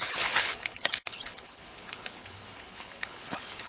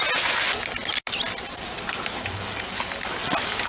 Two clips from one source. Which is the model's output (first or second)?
first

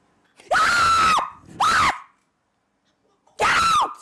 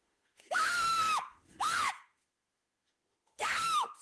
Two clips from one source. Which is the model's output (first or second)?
second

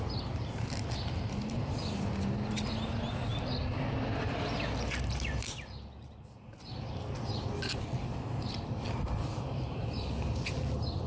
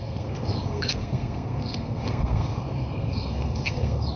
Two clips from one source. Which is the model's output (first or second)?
second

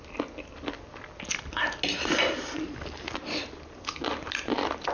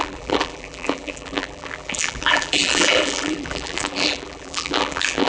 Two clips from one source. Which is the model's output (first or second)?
second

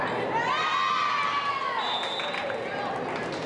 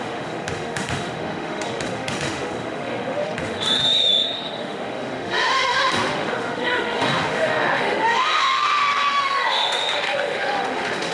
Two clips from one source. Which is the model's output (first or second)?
second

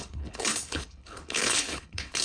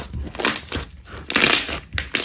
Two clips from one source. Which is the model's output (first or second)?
first